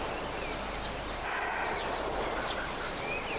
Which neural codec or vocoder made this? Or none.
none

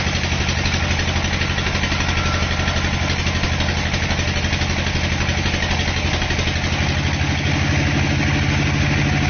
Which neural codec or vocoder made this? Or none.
none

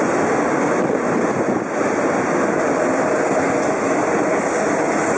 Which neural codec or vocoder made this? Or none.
none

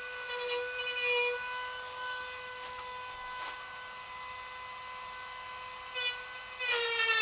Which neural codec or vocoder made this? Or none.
none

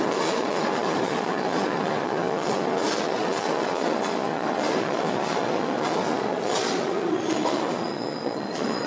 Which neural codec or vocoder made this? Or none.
vocoder, Vocos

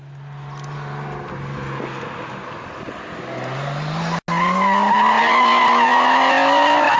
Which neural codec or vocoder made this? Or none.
none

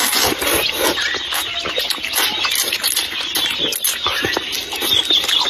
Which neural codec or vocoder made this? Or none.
none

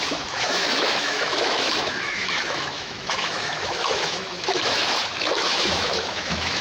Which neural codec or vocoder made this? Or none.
autoencoder, DAC-VAE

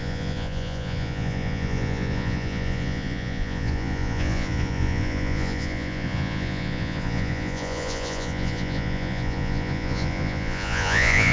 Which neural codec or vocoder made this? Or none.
vocoder, Vocos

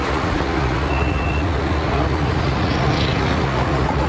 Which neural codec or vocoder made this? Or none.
vocoder, Vocos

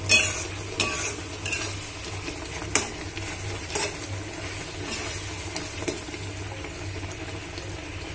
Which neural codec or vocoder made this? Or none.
none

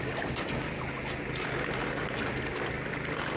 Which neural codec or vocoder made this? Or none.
none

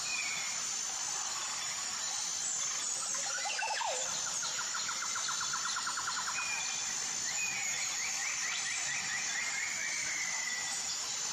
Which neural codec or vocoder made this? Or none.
none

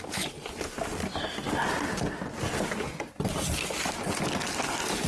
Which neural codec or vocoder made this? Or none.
none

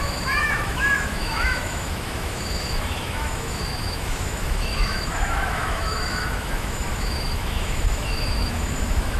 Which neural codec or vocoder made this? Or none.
autoencoder, DAC-VAE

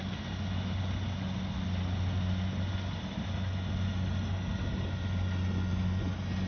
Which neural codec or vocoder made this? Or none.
none